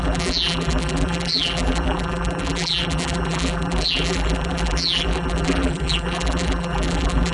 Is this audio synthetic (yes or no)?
yes